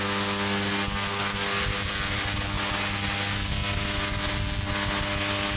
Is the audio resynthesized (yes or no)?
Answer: no